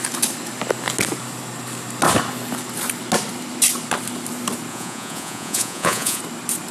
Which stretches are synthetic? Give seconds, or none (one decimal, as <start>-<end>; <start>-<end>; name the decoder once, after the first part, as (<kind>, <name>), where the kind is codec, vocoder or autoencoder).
4.7-6.2 (vocoder, Vocos)